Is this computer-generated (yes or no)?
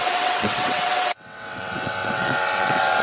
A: yes